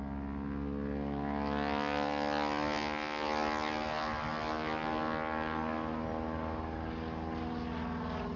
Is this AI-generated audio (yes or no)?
no